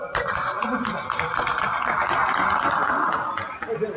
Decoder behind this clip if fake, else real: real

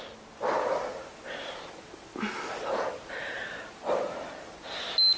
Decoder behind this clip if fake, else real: real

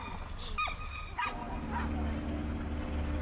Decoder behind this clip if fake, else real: real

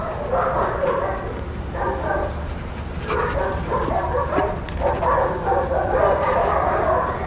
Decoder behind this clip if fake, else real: real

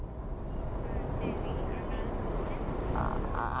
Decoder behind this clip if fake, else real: real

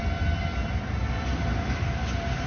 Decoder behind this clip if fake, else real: real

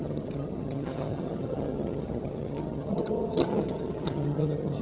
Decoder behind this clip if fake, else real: fake, vocoder, HiFi-GAN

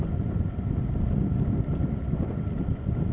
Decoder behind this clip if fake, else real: real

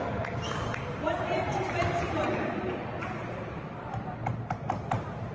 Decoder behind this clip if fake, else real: real